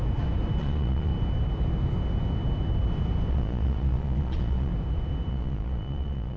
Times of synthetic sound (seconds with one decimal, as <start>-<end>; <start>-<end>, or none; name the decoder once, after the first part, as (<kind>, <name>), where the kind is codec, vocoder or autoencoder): 0.6-1.1 (vocoder, Vocos); 3.3-4.7; 5.3-6.4